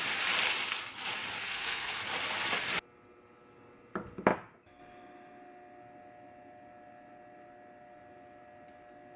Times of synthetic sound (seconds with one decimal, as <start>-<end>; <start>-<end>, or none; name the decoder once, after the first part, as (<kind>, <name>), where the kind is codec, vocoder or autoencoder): 1.4-2.0 (codec, SNAC)